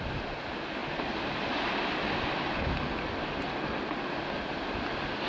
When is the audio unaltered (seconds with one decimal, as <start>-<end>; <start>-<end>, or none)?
0.0-5.3